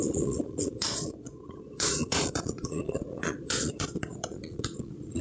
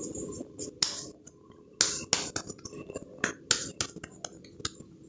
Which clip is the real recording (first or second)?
second